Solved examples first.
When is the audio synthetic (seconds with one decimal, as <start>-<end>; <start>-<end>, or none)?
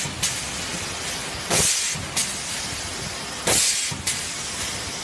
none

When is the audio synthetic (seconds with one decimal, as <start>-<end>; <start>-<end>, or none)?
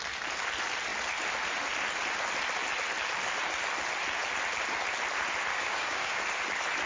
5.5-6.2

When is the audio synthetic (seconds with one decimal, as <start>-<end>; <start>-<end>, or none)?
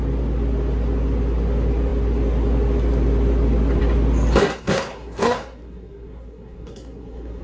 4.4-7.4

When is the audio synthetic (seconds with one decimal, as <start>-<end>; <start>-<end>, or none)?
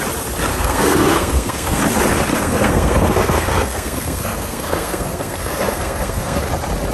0.5-1.8; 2.3-6.4